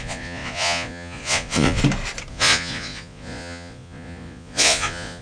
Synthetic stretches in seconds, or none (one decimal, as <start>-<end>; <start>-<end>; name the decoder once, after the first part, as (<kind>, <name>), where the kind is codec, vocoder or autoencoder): 0.0-1.8 (vocoder, Vocos); 2.3-5.2